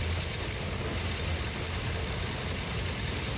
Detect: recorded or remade recorded